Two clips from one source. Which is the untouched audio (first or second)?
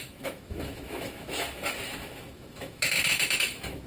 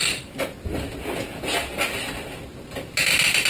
second